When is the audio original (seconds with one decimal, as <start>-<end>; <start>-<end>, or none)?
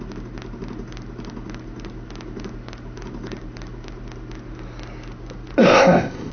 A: 0.0-5.6